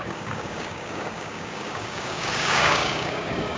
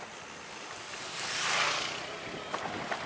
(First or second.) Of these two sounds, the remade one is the first